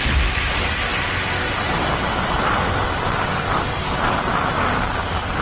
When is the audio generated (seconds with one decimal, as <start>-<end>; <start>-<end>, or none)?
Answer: none